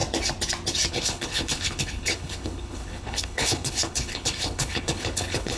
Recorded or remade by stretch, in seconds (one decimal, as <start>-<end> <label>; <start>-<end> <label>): 0.0-0.9 recorded; 0.9-5.6 remade